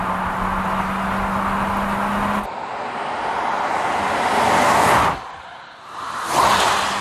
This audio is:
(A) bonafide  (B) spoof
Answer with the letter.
A